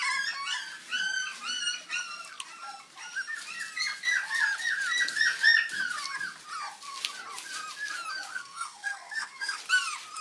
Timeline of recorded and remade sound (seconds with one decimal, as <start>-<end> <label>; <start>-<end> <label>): 0.0-8.3 recorded; 8.3-9.6 remade; 9.6-10.2 recorded